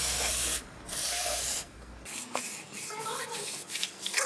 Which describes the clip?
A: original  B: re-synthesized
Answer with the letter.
B